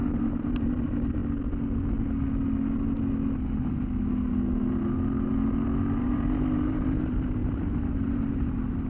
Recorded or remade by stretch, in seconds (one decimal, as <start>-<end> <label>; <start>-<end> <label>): 0.0-1.2 remade; 1.2-6.0 recorded; 6.0-8.9 remade